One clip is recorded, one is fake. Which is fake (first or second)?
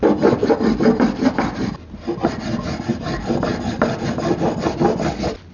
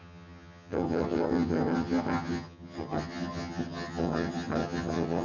second